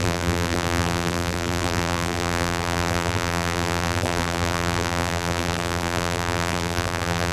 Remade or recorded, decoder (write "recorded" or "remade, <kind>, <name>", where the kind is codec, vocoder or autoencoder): remade, vocoder, BigVGAN v2